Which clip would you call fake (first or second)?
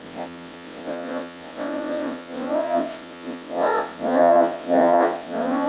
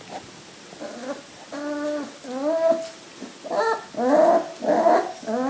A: first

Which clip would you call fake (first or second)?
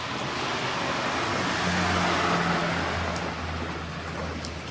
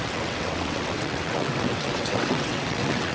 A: second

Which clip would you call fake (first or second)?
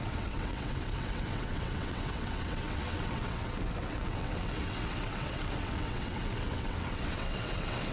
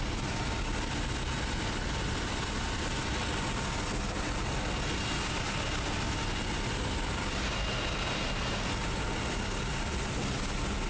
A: first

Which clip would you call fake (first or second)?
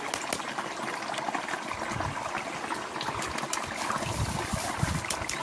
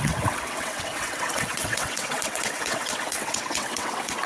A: second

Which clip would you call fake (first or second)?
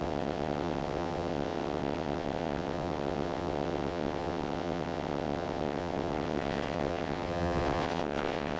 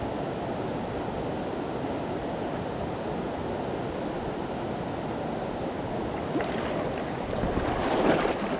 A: first